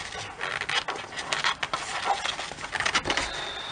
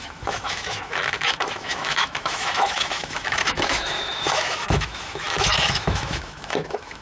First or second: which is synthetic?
second